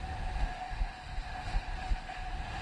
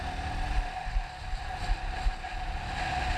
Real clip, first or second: second